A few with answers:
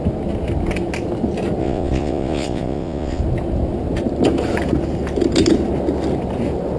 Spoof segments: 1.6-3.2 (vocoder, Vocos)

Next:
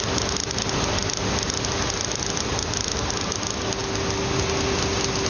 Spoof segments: none

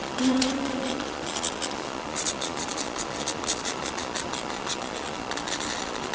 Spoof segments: 0.0-6.1 (vocoder, Vocos)

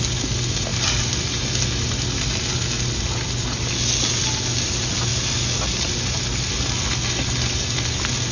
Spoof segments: none

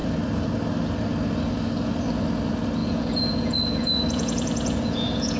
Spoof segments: 2.8-5.4 (vocoder, Vocos)

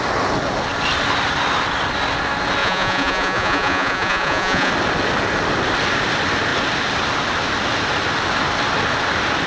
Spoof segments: 2.6-4.7 (vocoder, Vocos)